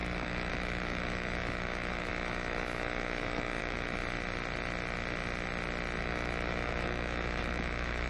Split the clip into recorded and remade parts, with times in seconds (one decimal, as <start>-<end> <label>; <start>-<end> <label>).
0.0-4.0 remade; 4.0-6.0 recorded; 6.0-8.1 remade